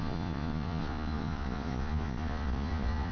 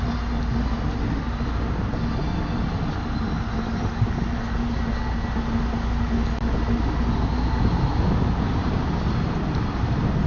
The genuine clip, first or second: second